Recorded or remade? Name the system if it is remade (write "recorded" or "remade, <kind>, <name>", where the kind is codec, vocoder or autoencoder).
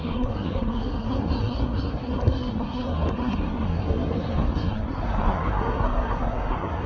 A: remade, codec, SNAC